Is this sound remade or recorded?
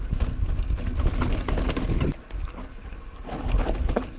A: recorded